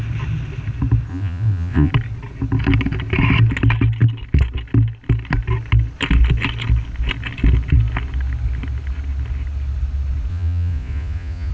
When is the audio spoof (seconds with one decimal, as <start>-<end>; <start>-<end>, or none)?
1.1-1.9; 10.3-11.5